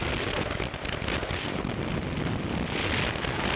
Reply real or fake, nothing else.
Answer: real